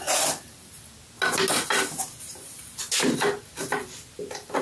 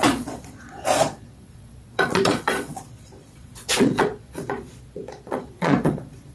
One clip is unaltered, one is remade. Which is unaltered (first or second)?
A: first